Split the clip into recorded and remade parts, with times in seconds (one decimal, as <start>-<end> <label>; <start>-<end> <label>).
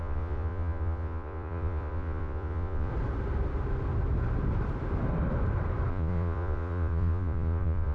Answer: 0.0-2.9 remade; 2.9-5.9 recorded; 5.9-7.9 remade